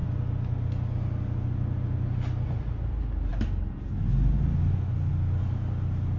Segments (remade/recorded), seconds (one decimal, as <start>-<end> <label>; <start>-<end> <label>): 0.0-6.2 recorded